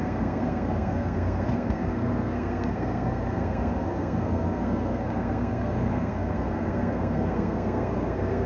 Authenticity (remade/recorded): remade